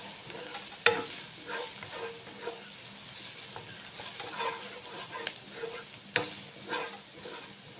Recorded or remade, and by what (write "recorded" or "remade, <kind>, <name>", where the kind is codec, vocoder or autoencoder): recorded